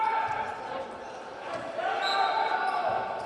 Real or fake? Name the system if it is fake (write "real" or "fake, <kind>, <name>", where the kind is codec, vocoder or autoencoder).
fake, vocoder, BigVGAN v2